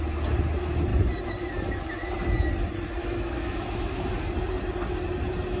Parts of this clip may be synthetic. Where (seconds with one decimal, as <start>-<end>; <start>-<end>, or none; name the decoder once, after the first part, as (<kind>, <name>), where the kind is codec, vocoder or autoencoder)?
3.0-4.1 (autoencoder, DAC-VAE)